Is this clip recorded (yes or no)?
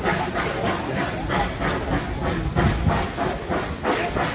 yes